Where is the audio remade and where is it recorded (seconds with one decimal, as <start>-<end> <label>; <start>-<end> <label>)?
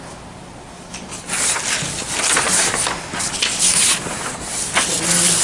0.0-5.4 recorded